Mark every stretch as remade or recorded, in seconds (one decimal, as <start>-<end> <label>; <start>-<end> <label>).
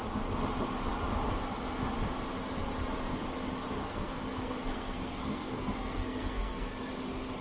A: 0.0-3.8 recorded; 3.8-6.8 remade; 6.8-7.4 recorded